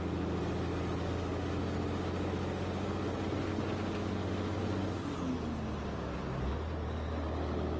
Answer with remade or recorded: recorded